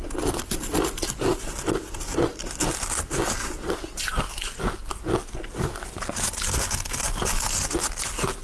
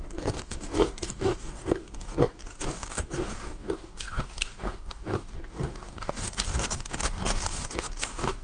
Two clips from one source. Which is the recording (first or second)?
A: first